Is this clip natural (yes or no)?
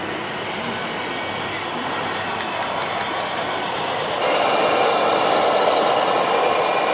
yes